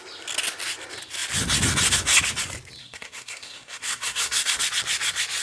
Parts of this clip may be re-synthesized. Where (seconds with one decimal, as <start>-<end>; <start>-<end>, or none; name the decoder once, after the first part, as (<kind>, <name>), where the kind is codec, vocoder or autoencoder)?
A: 2.8-4.6 (codec, SNAC)